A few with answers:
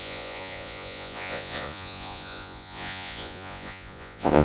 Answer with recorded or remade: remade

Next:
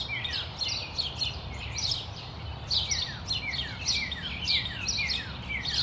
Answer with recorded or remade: recorded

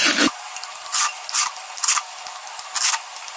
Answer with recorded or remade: recorded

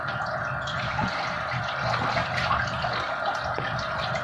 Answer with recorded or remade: recorded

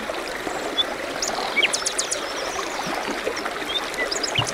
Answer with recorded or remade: recorded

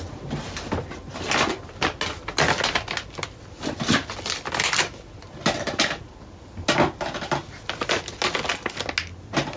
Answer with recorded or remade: recorded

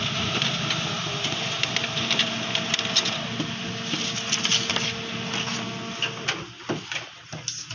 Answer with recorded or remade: recorded